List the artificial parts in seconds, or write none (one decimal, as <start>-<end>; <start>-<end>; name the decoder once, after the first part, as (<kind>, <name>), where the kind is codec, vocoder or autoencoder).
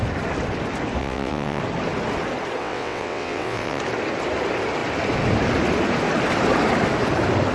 1.0-1.6 (vocoder, WaveNeXt); 2.6-3.8